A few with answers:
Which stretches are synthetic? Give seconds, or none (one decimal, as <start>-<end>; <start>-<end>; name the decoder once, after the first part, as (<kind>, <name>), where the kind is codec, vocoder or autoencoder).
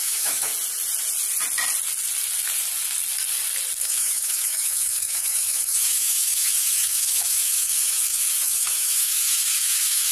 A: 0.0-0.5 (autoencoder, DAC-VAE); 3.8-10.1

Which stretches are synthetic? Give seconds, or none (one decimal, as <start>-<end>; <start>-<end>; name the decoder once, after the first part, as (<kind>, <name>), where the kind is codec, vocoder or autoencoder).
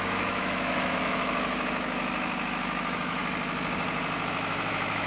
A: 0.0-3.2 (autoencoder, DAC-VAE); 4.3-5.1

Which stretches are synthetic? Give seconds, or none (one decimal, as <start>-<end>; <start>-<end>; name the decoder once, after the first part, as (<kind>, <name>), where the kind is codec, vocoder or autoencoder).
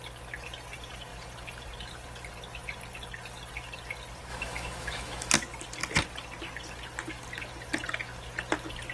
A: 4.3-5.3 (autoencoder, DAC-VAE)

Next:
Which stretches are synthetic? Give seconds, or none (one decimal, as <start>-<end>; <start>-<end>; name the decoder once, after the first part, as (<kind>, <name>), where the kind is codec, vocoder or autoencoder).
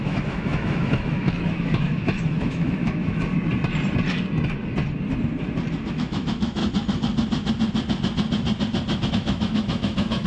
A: 0.0-3.3 (autoencoder, DAC-VAE); 5.9-6.6; 9.1-10.3